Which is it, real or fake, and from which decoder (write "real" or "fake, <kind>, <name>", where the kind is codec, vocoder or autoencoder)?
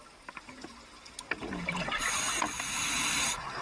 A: real